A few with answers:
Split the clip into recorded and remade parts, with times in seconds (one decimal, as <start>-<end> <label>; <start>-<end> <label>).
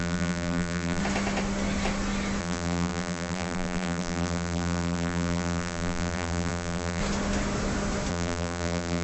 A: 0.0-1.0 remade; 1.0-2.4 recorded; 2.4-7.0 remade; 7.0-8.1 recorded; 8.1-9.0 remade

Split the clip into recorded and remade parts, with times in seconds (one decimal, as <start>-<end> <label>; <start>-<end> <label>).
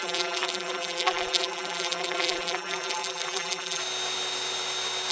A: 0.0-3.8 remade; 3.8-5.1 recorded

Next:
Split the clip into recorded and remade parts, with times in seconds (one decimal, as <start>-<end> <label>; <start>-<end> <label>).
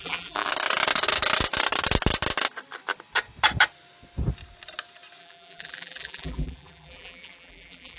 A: 0.0-0.5 remade; 0.5-5.2 recorded; 5.2-8.0 remade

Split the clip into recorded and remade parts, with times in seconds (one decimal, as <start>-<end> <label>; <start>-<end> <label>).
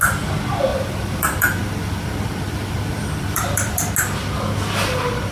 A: 0.0-0.7 recorded; 0.7-3.9 remade; 3.9-5.3 recorded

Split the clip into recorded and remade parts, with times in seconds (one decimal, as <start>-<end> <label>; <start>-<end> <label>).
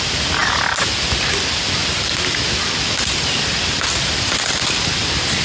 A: 0.0-5.4 recorded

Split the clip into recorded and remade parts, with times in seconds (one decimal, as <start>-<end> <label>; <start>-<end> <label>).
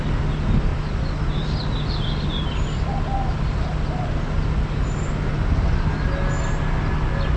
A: 0.0-7.4 recorded